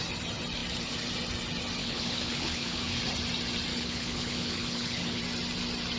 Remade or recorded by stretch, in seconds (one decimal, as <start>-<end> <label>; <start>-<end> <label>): 0.0-1.8 recorded; 1.8-3.0 remade; 3.0-3.7 recorded; 3.7-5.2 remade; 5.2-6.0 recorded